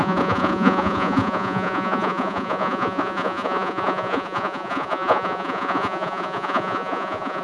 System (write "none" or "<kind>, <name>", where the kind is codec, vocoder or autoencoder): vocoder, Vocos